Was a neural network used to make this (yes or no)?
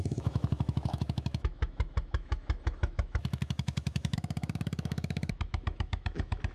yes